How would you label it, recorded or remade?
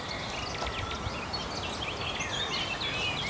recorded